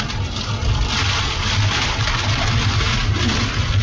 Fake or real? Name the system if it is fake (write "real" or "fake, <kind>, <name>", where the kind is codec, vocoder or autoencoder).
real